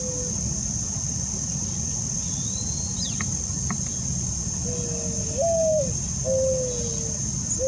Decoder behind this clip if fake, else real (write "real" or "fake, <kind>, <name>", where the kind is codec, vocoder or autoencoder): real